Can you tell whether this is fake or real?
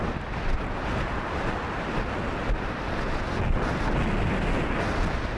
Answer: real